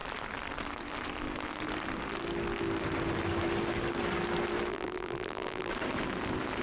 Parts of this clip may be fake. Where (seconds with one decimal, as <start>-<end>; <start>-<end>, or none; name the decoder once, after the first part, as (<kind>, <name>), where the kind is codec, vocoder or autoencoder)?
4.7-5.7 (vocoder, BigVGAN v2)